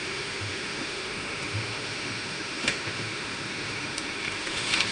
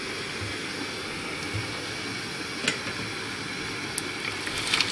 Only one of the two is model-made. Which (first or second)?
first